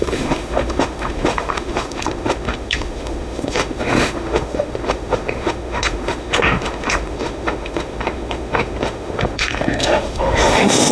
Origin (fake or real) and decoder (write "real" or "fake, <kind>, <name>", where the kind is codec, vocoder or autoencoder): fake, autoencoder, DAC-VAE